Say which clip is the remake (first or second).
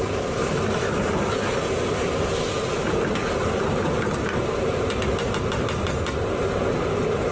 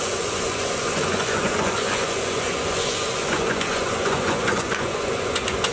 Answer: second